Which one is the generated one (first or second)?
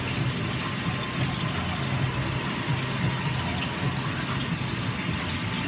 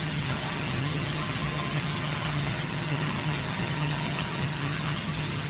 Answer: second